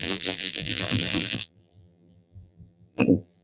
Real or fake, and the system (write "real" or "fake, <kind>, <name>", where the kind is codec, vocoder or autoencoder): fake, vocoder, BigVGAN v2